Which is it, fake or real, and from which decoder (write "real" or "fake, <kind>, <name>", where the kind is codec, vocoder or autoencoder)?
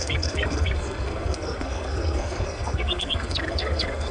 fake, codec, SNAC